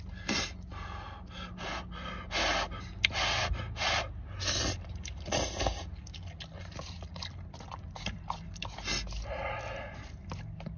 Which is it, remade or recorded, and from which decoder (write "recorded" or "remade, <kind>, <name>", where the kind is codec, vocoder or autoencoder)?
recorded